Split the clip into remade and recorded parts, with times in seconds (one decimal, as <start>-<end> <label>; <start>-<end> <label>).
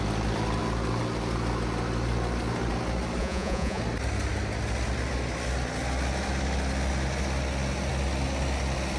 0.0-3.2 recorded; 3.2-3.8 remade; 3.8-9.0 recorded